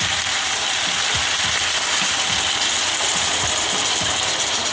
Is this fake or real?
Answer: real